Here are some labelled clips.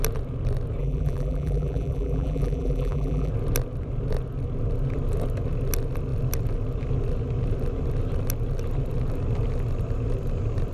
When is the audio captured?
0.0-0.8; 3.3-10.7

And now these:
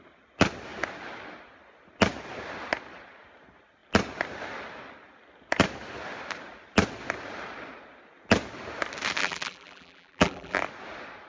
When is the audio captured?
0.0-9.2; 10.6-11.3

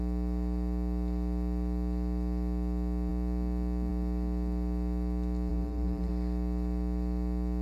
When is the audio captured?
0.0-5.5; 6.1-7.6

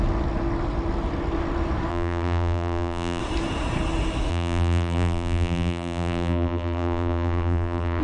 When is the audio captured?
0.0-1.9; 3.2-4.3

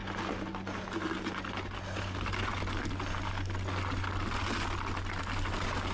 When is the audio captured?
0.0-5.9

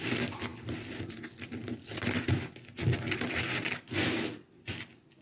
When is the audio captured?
0.0-5.2